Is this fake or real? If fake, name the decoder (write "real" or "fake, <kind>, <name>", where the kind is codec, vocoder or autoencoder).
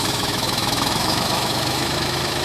fake, autoencoder, DAC-VAE